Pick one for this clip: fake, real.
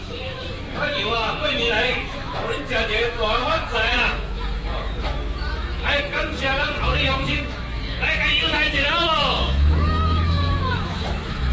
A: fake